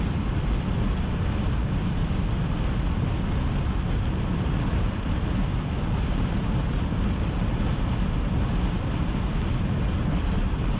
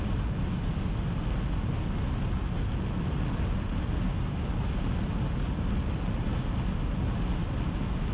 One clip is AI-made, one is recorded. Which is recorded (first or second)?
second